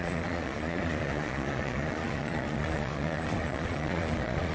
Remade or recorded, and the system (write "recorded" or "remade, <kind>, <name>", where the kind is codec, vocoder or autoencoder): remade, vocoder, Vocos